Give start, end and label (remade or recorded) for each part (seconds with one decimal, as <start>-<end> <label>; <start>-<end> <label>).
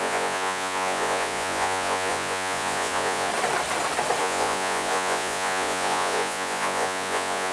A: 0.0-3.3 remade; 3.3-4.2 recorded; 4.2-7.5 remade